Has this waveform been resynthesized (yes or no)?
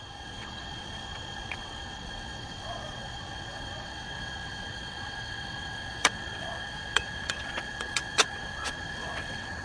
yes